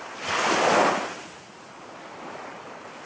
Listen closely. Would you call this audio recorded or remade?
recorded